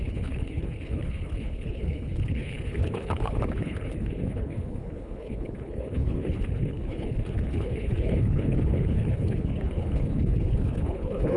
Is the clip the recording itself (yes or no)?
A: no